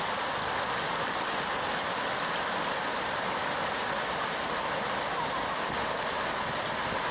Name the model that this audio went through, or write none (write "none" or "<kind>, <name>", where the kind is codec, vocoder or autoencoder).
none